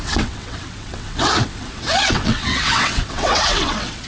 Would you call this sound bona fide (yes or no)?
no